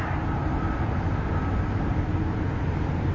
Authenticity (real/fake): real